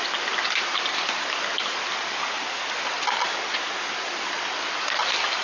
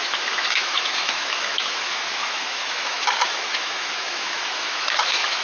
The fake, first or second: second